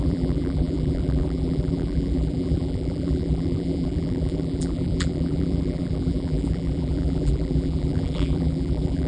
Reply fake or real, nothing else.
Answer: fake